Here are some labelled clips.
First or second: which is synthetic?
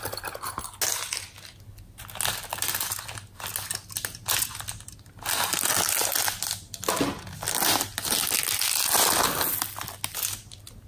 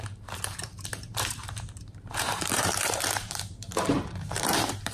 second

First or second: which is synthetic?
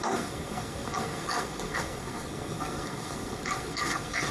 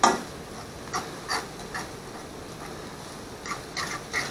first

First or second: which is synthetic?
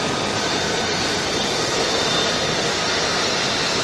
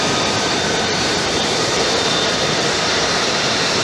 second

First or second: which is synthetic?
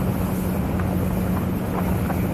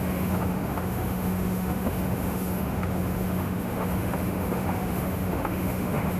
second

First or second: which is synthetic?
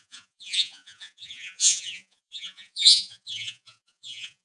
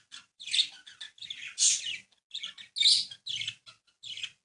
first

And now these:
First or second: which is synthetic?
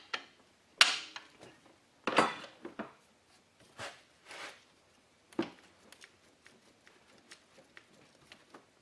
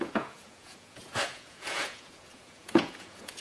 second